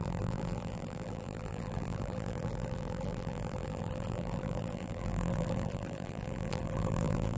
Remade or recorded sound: remade